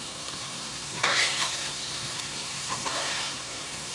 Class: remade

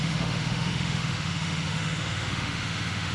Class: remade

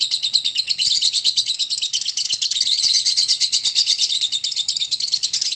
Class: remade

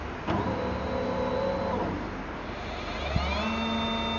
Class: recorded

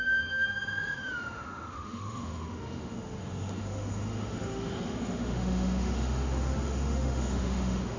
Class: remade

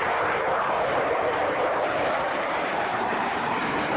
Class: remade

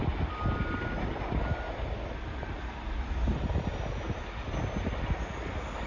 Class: recorded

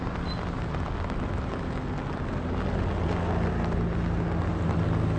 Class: recorded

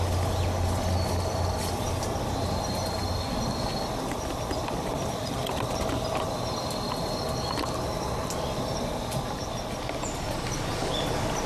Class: recorded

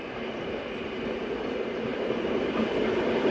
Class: recorded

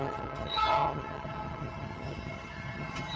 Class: remade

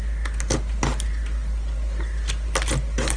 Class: recorded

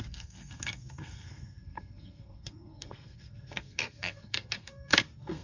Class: remade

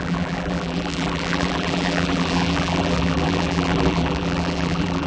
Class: remade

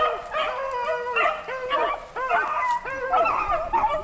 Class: recorded